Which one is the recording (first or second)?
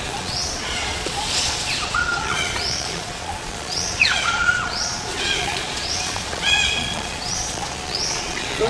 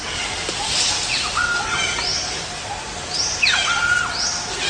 second